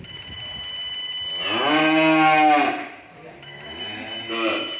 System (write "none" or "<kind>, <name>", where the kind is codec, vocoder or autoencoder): none